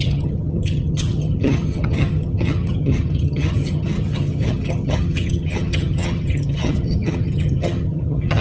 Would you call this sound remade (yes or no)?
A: yes